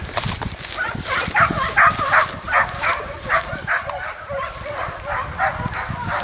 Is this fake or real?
real